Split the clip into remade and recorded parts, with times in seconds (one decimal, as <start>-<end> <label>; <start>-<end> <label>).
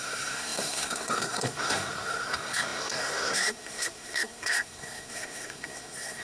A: 0.0-6.2 remade